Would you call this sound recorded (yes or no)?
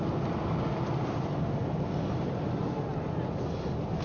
yes